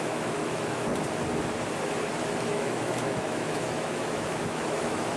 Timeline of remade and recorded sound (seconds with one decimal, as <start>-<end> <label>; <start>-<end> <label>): 0.0-0.9 remade; 0.9-2.5 recorded; 2.5-5.2 remade

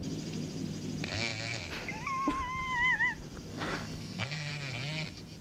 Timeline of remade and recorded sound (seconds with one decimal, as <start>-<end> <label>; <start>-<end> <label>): 0.0-3.5 recorded; 3.5-4.5 remade; 4.5-5.4 recorded

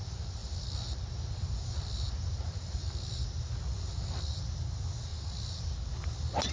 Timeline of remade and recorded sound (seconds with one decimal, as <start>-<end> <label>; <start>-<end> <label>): 0.0-6.5 recorded

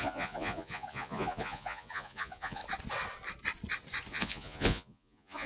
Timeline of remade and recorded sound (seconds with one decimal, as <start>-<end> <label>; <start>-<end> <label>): 0.0-2.6 remade; 2.6-4.1 recorded; 4.1-5.5 remade

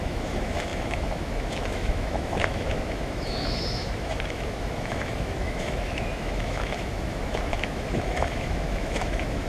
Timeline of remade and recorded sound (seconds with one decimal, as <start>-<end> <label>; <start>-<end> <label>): 0.0-9.5 remade